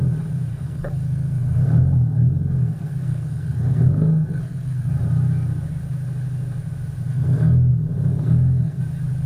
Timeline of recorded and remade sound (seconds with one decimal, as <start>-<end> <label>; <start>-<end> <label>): 0.0-0.5 recorded; 0.5-4.9 remade; 4.9-7.1 recorded; 7.1-7.7 remade; 7.7-8.1 recorded; 8.1-8.8 remade; 8.8-9.3 recorded